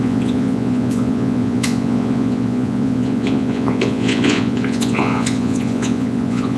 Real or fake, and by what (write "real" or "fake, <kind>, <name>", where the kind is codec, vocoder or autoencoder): fake, vocoder, Vocos